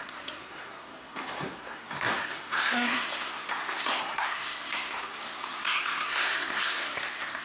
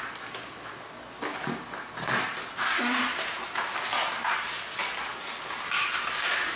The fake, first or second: first